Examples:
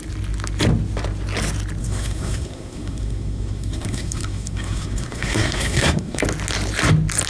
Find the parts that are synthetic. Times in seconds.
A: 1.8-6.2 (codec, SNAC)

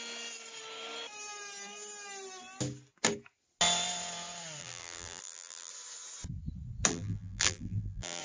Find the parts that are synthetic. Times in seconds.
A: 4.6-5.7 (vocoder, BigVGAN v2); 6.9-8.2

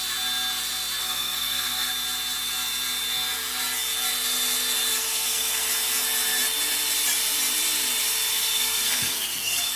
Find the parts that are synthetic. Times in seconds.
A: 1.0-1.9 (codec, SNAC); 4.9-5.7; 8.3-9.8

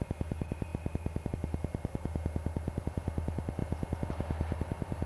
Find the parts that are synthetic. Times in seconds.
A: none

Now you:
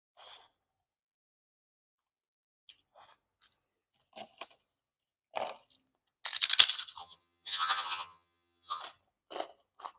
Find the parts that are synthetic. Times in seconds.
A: 7.0-8.8 (vocoder, HiFi-GAN)

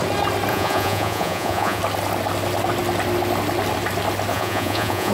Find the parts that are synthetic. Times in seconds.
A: 0.5-1.8 (vocoder, Vocos); 4.3-5.1